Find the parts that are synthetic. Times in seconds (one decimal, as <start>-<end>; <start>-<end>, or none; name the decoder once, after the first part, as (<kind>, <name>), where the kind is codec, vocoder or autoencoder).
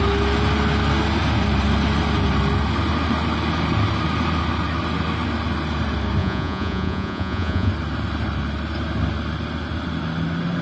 6.2-7.7 (vocoder, Vocos)